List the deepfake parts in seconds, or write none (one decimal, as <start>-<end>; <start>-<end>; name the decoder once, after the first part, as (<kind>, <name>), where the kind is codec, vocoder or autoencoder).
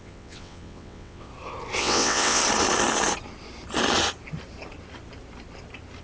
0.0-1.3 (vocoder, WaveNeXt); 1.8-2.4